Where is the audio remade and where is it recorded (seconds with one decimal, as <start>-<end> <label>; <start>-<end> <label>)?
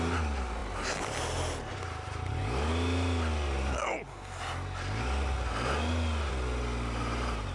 0.0-7.5 recorded